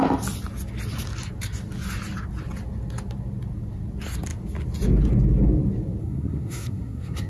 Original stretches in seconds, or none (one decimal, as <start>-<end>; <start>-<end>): 0.0-6.0